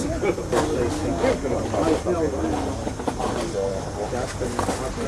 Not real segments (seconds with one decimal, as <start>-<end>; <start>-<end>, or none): none